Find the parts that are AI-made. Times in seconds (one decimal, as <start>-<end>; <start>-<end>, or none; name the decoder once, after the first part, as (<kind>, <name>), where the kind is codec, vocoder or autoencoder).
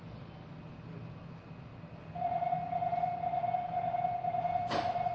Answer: none